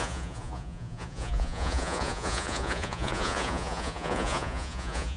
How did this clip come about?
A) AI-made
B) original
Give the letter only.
A